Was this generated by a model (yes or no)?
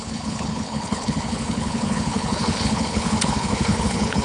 yes